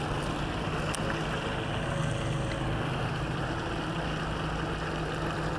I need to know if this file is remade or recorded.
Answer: recorded